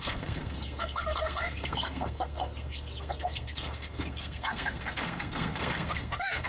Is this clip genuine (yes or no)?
no